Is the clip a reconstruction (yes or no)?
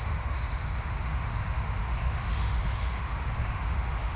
yes